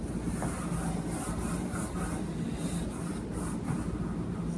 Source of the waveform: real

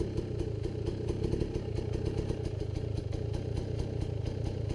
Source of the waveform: real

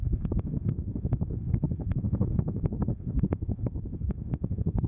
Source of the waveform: fake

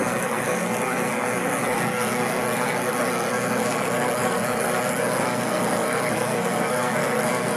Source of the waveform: fake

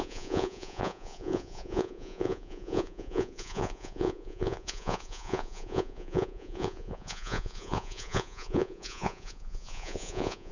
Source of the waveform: fake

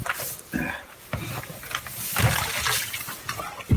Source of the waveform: real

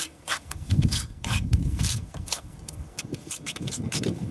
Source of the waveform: fake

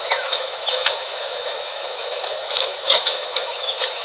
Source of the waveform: fake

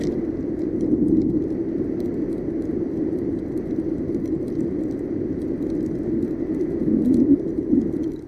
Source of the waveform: fake